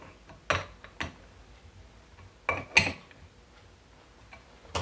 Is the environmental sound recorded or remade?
recorded